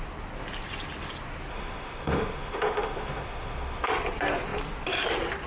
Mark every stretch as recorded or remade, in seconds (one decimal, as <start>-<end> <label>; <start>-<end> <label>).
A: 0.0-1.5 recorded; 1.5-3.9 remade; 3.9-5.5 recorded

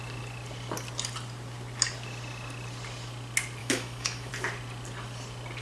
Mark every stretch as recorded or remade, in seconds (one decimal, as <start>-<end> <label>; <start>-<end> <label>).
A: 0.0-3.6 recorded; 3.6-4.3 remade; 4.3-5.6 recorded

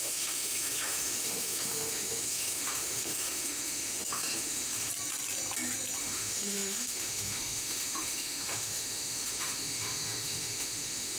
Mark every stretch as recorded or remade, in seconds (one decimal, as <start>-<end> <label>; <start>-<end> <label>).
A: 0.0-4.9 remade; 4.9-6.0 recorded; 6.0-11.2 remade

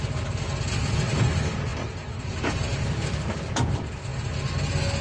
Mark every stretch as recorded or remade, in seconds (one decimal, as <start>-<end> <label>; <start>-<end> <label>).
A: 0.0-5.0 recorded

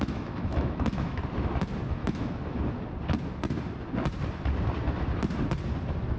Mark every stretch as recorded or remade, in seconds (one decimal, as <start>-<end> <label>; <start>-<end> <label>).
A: 0.0-1.2 remade; 1.2-2.0 recorded; 2.0-2.6 remade; 2.6-6.2 recorded

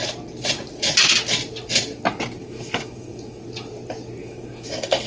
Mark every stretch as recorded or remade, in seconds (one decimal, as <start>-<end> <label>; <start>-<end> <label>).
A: 0.0-2.4 recorded; 2.4-3.4 remade; 3.4-4.2 recorded; 4.2-5.1 remade

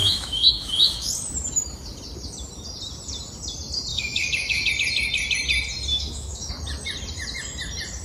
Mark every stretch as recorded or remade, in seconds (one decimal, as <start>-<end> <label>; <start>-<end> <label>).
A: 0.0-1.1 remade; 1.1-3.9 recorded; 3.9-4.7 remade; 4.7-5.9 recorded; 5.9-6.5 remade; 6.5-8.0 recorded